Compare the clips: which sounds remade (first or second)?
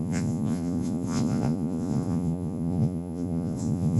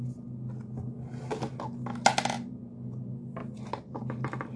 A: first